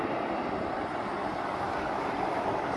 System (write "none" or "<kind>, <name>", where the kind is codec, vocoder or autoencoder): none